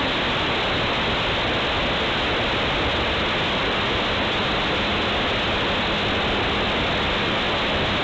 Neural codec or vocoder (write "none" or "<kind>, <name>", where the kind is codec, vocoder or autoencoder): none